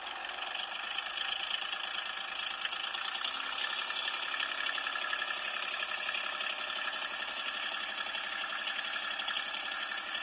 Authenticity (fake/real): real